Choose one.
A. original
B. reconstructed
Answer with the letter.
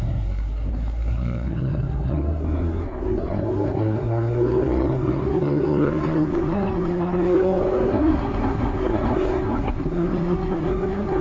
B